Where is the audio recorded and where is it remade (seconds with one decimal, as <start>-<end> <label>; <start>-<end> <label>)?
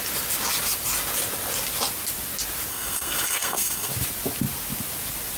0.0-2.7 recorded; 2.7-3.9 remade; 3.9-5.4 recorded